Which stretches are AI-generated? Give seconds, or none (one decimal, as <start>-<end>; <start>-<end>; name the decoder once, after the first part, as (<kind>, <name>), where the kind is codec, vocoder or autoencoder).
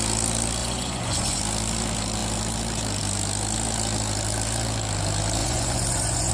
0.6-1.4 (vocoder, Vocos); 5.4-6.3